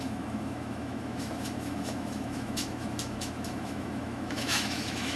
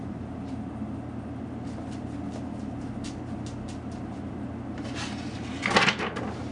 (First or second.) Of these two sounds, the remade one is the first